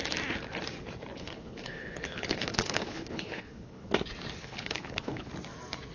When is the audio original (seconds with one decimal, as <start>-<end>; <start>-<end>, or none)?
0.0-1.1; 3.9-4.4; 5.3-5.9